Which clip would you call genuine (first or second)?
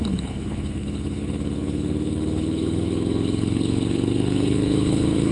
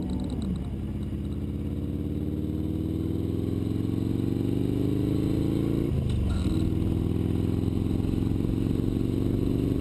second